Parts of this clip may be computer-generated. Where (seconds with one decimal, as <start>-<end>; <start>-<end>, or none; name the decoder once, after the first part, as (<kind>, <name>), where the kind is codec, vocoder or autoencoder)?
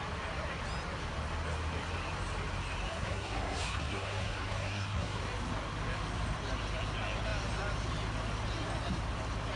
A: 2.9-5.2 (codec, SNAC)